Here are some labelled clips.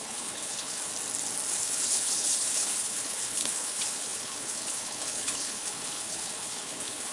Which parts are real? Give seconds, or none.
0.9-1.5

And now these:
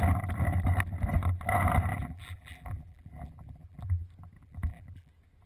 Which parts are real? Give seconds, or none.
0.0-1.9; 4.0-4.4; 5.1-5.5

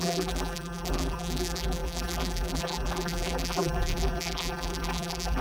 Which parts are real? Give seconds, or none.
none